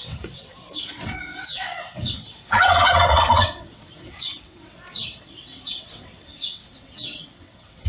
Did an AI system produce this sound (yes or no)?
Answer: yes